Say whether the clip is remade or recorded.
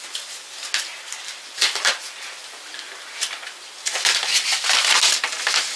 recorded